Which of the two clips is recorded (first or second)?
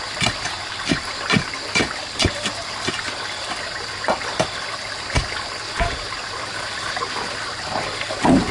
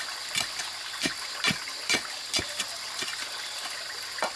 second